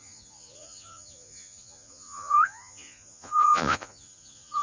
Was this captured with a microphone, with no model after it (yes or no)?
no